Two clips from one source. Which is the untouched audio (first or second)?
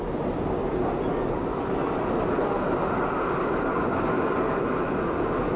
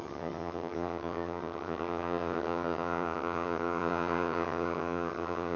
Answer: first